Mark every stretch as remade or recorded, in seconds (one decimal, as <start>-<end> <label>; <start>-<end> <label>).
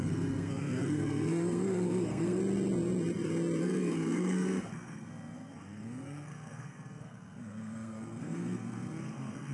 0.0-2.4 remade; 2.4-3.6 recorded; 3.6-9.5 remade